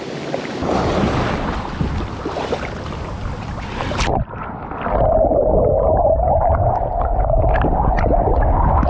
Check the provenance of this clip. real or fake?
real